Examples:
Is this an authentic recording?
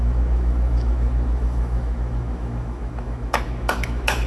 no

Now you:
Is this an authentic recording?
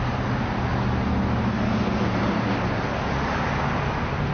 yes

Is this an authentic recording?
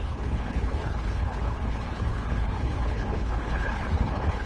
no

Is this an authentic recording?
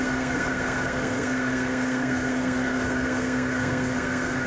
no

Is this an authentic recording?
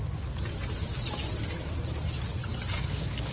yes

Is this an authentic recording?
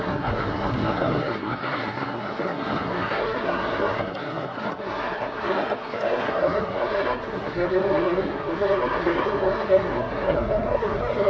no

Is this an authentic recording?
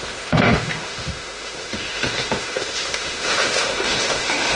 no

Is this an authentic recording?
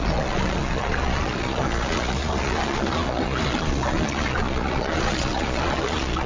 no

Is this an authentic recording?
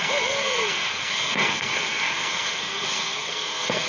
no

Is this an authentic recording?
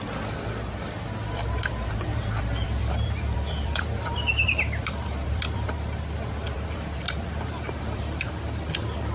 no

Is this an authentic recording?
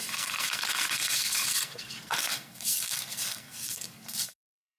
no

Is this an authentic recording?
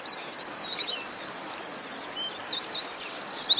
yes